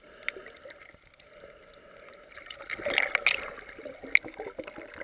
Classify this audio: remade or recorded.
recorded